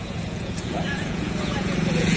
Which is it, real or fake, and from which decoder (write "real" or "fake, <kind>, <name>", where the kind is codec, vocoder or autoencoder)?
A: fake, vocoder, Vocos